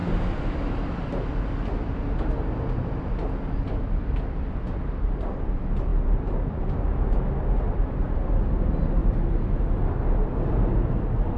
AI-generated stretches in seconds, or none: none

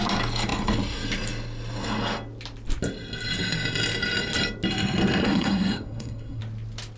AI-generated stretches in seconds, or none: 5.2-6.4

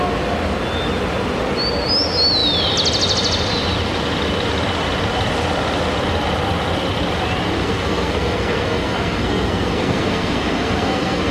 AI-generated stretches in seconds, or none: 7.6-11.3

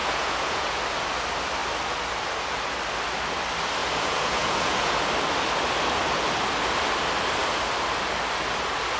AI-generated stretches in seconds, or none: 0.0-0.8; 3.8-5.1

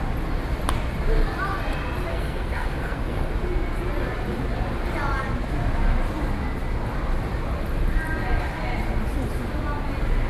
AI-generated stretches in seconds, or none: 2.1-3.3

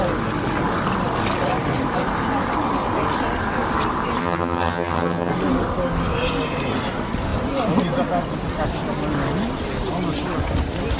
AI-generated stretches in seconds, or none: 4.2-5.3

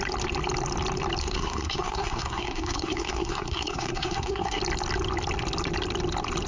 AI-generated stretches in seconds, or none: 1.2-4.6

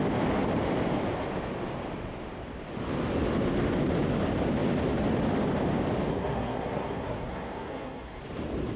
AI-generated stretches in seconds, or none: 6.1-8.2